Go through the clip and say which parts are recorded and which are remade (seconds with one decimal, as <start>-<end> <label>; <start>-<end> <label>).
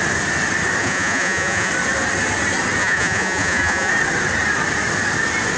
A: 0.0-0.8 recorded; 0.8-1.7 remade; 1.7-2.8 recorded; 2.8-3.9 remade; 3.9-5.6 recorded